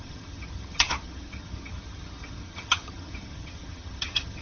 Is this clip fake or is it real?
fake